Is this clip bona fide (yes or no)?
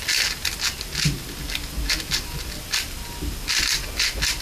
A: yes